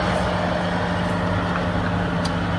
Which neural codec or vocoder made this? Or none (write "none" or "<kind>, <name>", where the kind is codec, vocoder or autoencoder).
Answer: none